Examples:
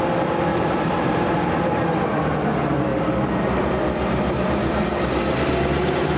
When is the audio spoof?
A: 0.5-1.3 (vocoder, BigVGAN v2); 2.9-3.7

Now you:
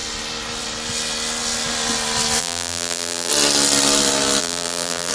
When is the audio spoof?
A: 2.4-3.3 (vocoder, BigVGAN v2); 4.4-5.1

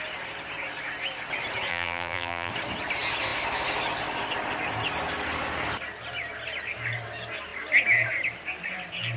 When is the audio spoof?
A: 1.7-2.5 (vocoder, BigVGAN v2)

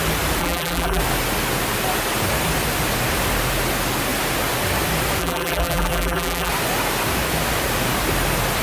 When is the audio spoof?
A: 0.4-1.0 (vocoder, BigVGAN v2); 5.2-6.5